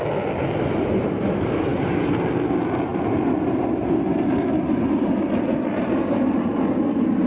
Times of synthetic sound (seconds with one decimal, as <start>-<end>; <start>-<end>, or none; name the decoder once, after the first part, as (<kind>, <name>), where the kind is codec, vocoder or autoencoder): 1.7-2.5 (vocoder, BigVGAN v2); 2.9-6.4